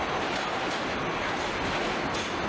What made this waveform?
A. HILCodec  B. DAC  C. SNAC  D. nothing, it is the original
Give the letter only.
D